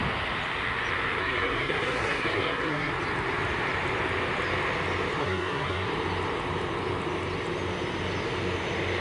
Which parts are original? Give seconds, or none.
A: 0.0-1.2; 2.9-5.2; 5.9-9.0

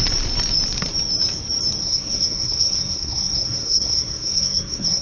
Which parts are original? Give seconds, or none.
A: 0.0-1.8

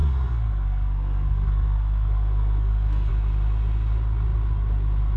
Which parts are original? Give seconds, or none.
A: 3.1-5.2

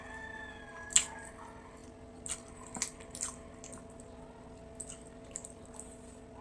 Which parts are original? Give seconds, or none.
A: 0.0-6.4

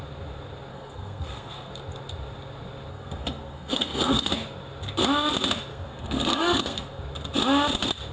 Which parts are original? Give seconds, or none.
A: 0.0-0.7; 1.7-2.9; 4.3-5.7; 7.0-8.1

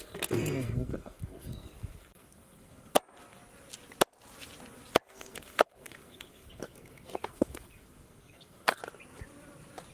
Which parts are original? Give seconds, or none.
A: 3.0-5.1; 8.8-9.9

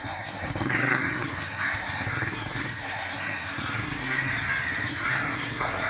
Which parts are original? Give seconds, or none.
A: 4.3-4.9

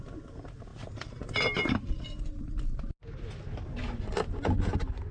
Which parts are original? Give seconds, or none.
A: 0.0-5.1